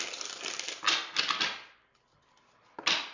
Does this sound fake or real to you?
real